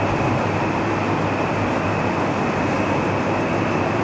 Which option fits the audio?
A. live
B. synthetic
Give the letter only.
A